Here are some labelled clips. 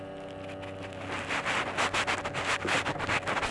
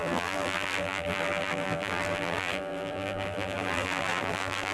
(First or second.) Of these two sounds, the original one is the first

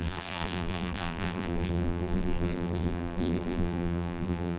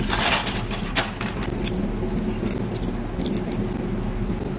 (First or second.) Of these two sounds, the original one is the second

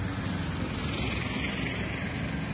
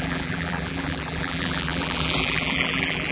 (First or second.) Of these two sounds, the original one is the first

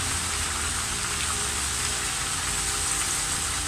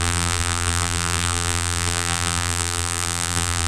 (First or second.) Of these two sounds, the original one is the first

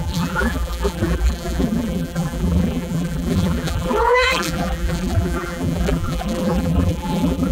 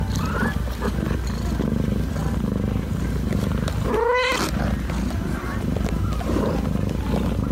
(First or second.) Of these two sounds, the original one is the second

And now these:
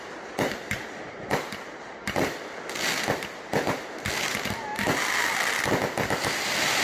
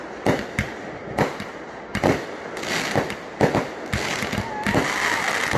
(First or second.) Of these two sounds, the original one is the second